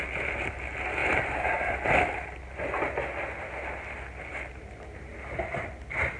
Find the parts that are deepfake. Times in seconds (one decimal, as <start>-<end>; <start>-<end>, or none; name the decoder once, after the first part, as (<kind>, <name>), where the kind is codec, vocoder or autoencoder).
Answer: 1.0-1.9 (vocoder, BigVGAN v2); 4.3-5.1